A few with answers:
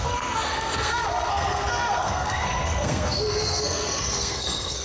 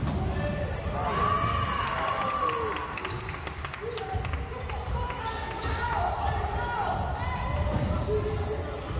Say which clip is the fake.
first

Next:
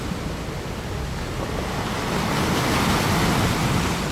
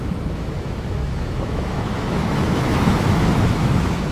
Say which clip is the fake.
second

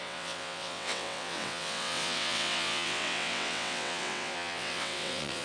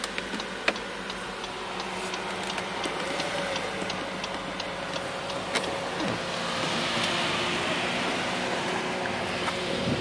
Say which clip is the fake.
first